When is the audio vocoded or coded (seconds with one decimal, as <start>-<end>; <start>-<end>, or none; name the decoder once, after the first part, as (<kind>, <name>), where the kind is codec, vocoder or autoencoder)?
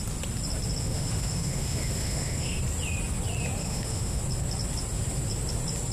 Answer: 0.8-2.6 (autoencoder, DAC-VAE); 3.6-4.2